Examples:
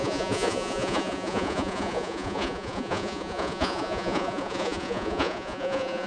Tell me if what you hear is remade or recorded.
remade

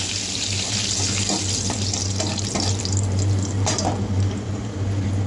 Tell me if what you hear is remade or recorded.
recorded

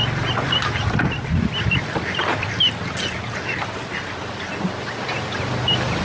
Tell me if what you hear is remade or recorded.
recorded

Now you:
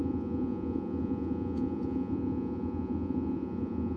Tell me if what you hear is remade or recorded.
remade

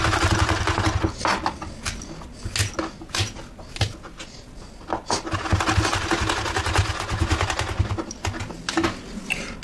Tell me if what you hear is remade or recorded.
recorded